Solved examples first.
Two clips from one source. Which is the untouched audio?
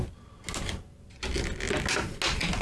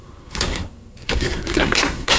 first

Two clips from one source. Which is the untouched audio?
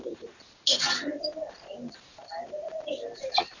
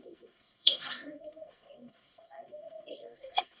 first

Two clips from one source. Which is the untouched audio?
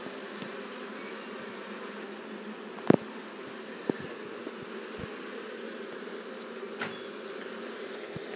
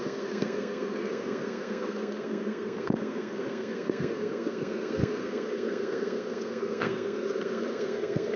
first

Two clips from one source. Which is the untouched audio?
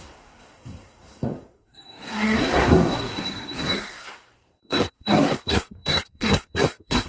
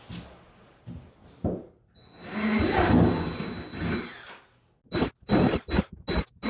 second